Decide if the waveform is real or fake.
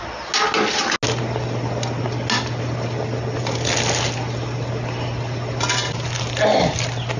real